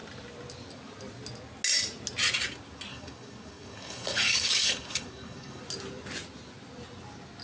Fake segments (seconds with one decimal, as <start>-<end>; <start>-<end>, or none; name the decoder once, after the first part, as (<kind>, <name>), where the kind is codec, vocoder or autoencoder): 2.9-5.6 (codec, DAC)

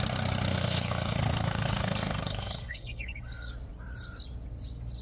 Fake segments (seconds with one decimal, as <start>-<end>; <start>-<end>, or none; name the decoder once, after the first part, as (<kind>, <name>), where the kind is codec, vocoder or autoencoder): 0.5-3.5 (codec, SNAC)